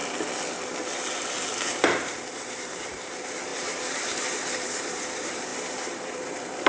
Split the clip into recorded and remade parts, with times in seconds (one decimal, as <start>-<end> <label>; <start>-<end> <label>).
0.0-1.8 recorded; 1.8-6.7 remade